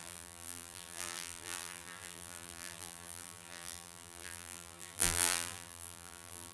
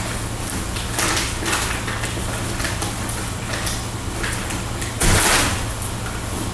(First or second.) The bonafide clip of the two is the second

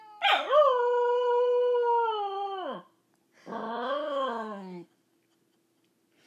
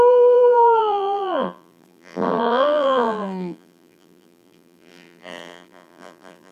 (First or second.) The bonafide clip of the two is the first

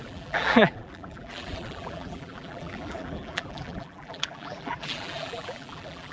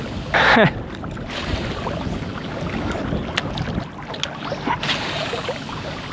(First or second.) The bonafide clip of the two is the second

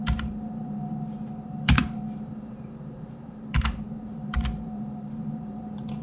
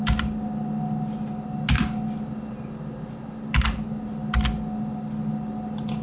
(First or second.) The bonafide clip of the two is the second